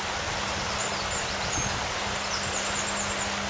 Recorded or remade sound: recorded